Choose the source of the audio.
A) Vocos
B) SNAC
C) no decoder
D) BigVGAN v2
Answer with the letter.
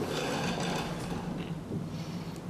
C